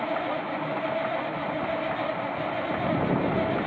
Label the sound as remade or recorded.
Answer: recorded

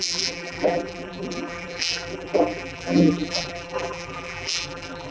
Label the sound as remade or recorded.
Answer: remade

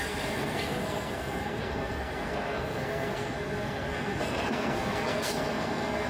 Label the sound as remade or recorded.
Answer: remade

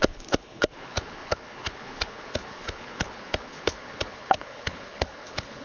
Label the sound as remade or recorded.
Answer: remade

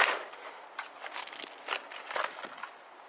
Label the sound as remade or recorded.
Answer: recorded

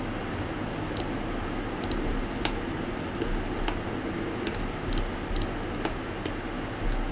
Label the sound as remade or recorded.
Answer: recorded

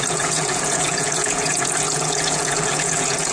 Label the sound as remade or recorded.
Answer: remade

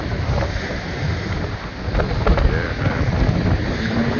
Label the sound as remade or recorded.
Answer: recorded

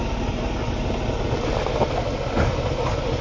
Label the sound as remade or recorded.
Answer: recorded